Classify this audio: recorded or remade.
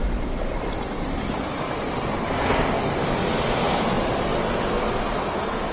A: recorded